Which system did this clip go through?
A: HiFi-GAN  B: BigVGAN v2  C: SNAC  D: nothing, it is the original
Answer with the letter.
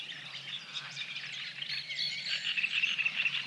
B